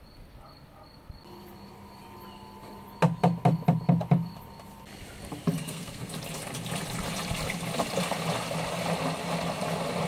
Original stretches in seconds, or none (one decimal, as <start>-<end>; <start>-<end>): 0.0-5.6; 6.1-10.1